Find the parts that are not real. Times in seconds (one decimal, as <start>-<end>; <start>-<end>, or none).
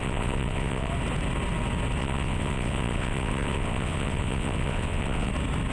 0.0-0.9; 2.0-5.3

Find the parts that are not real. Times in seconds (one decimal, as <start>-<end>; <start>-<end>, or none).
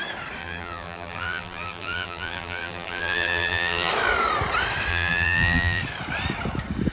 0.4-3.9; 4.9-5.8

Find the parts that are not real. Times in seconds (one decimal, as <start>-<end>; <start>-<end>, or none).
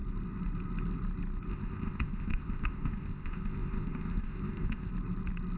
1.5-4.9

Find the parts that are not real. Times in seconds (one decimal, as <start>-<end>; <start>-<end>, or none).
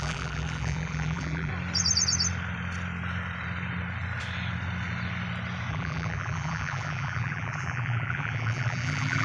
0.0-1.5; 5.7-9.2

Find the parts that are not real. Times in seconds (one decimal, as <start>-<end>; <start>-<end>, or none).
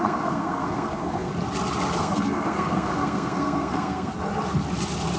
0.0-1.3; 2.0-4.1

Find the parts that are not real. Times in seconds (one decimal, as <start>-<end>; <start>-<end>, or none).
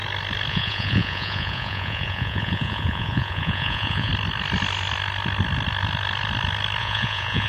0.5-4.1; 6.8-7.5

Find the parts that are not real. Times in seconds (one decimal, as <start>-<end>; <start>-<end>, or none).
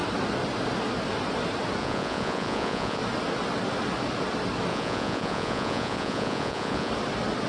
1.8-3.0; 4.7-6.9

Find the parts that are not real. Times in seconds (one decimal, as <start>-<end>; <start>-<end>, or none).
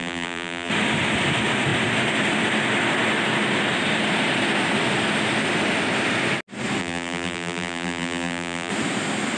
0.0-0.7; 6.8-8.7